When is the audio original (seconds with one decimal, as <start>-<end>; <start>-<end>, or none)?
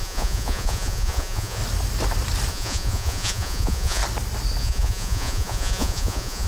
1.6-2.5; 4.0-4.6